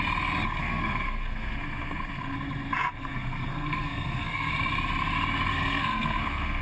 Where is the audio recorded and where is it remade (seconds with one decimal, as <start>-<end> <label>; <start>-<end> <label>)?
0.0-0.6 recorded; 0.6-2.4 remade; 2.4-3.0 recorded; 3.0-4.5 remade; 4.5-5.5 recorded; 5.5-6.6 remade